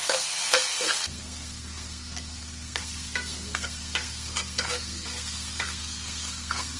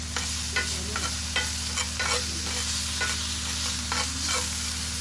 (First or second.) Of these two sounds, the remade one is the first